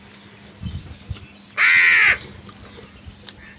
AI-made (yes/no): no